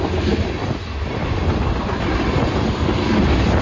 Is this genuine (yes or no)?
yes